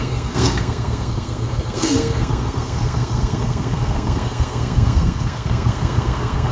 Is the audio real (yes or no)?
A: no